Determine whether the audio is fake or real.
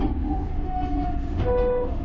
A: fake